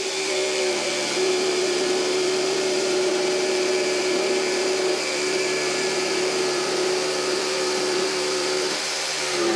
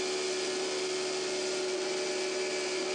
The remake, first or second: first